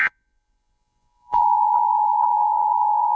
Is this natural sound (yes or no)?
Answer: no